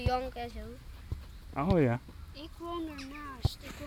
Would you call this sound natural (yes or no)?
yes